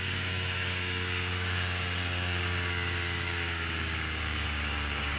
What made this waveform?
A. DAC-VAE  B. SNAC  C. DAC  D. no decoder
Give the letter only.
C